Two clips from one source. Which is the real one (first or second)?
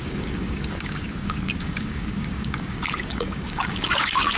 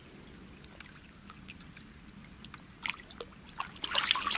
second